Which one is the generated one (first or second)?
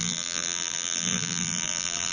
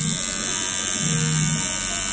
first